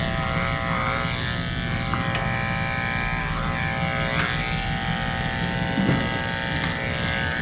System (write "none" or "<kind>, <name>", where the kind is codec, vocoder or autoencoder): none